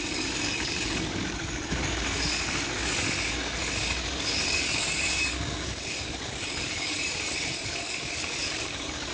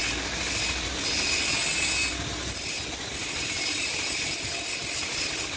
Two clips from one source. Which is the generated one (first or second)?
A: first